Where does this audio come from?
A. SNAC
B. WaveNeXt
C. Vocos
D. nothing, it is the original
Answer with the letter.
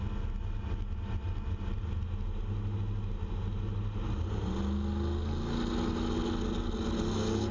D